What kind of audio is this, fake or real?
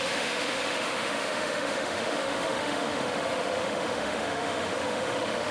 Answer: fake